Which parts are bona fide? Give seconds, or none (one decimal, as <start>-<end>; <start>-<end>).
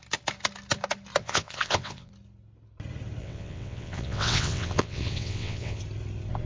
0.0-1.2; 2.1-3.2; 5.8-6.5